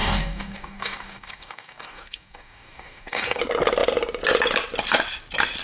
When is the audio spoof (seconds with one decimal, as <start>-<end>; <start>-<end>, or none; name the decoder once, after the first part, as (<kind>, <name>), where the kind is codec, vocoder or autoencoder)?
0.0-3.4 (codec, DAC)